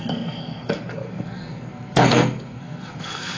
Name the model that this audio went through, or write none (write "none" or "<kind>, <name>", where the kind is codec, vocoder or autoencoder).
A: codec, SNAC